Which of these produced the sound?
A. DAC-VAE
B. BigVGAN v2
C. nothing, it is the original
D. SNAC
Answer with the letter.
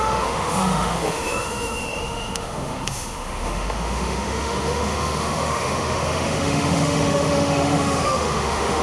A